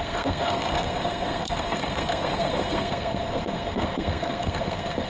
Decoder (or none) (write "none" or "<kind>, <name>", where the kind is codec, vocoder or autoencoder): codec, SNAC